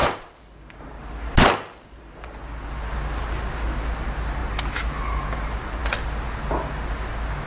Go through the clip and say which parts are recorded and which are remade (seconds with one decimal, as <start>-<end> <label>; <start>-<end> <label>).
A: 0.0-1.0 remade; 1.0-7.5 recorded